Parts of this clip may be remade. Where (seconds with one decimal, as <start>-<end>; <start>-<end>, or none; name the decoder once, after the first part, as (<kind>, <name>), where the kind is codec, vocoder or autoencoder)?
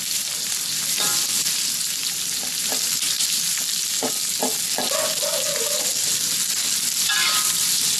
0.0-1.1 (vocoder, BigVGAN v2); 2.2-3.5; 6.4-8.0